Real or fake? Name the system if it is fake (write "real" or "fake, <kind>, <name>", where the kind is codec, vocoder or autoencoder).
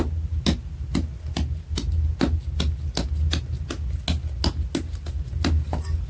real